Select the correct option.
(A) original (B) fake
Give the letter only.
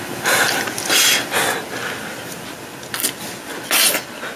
A